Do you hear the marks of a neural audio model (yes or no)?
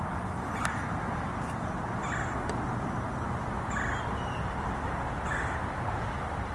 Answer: no